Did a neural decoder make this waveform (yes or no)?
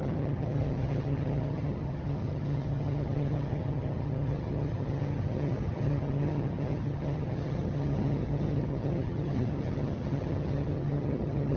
yes